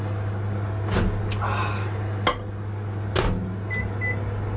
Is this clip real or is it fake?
real